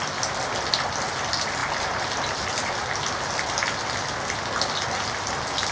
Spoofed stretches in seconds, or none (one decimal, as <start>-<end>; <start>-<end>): none